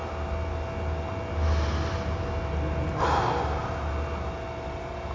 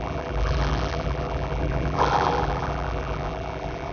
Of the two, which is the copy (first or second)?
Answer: second